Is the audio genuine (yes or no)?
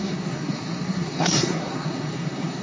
no